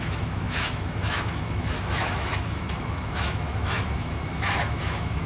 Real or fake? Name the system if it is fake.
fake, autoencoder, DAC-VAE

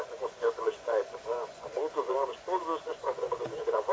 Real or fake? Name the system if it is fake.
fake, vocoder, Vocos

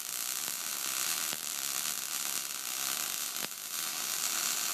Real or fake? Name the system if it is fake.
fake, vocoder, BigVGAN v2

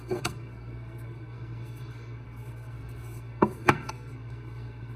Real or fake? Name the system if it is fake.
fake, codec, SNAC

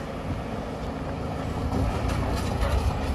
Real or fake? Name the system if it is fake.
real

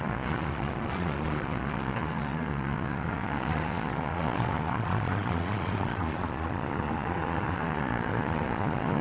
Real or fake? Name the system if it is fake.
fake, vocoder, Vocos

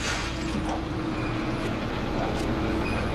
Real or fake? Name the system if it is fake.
fake, vocoder, Vocos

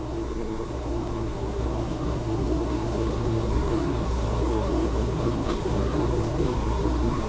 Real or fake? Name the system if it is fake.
fake, codec, SNAC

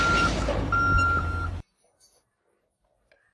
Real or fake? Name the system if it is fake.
real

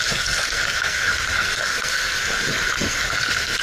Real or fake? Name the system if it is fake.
fake, codec, SNAC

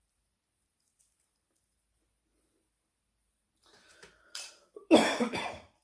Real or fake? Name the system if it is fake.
fake, vocoder, BigVGAN v2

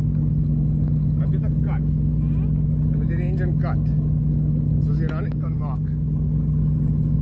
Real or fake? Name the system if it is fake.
real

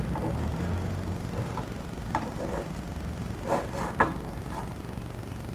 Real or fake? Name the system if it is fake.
real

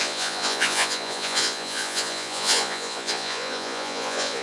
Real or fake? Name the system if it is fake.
fake, vocoder, Vocos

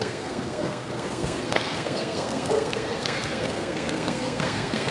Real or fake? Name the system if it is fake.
fake, codec, SNAC